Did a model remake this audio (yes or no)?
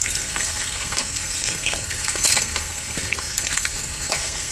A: yes